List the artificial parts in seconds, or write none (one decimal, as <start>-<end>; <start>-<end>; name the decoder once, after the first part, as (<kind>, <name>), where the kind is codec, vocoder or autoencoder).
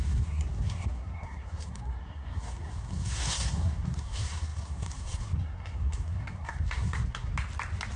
0.0-7.3 (codec, SNAC)